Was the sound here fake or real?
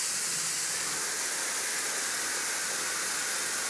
real